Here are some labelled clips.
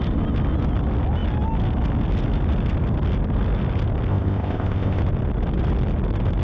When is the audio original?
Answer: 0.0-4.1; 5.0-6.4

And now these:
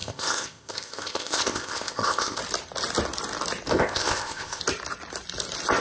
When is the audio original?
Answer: 2.4-3.7; 4.6-5.8